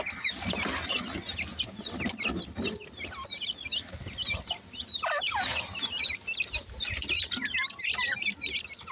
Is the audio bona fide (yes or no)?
yes